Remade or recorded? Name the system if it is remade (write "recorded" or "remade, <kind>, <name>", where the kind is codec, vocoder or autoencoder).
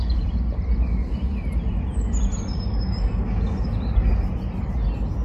recorded